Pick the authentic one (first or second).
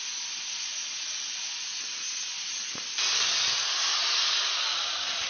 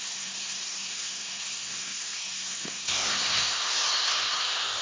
first